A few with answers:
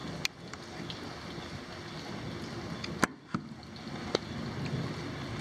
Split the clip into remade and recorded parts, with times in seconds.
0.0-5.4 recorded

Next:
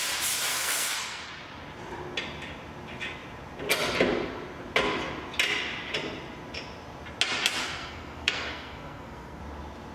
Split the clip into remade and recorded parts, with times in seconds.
0.0-0.5 recorded; 0.5-1.3 remade; 1.3-7.6 recorded; 7.6-9.4 remade; 9.4-9.9 recorded

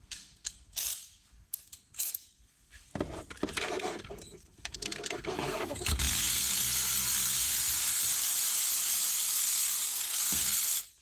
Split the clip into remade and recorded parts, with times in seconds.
0.0-2.9 remade; 2.9-3.8 recorded; 3.8-8.0 remade; 8.0-9.1 recorded; 9.1-11.0 remade

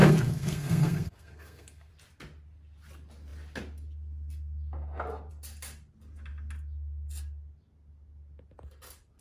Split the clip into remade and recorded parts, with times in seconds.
0.0-1.9 remade; 1.9-9.2 recorded

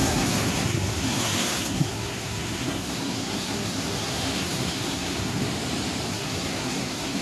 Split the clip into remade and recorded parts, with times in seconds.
0.0-5.5 remade; 5.5-6.1 recorded; 6.1-7.2 remade

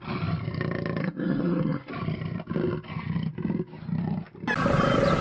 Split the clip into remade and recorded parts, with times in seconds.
0.0-1.0 recorded; 1.0-1.9 remade; 1.9-5.2 recorded

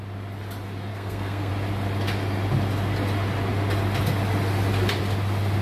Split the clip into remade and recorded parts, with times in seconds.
0.0-0.9 recorded; 0.9-1.5 remade; 1.5-5.6 recorded